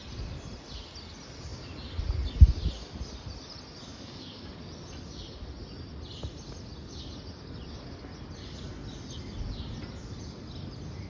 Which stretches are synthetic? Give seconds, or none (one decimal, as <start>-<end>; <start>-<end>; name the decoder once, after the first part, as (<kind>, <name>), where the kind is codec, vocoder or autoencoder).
3.9-4.5 (codec, DAC)